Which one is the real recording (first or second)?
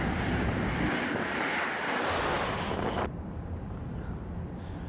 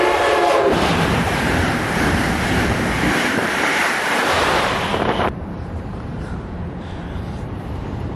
first